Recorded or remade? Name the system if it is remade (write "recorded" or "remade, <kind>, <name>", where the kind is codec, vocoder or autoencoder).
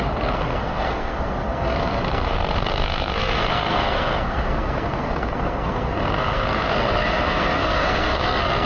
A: remade, codec, SNAC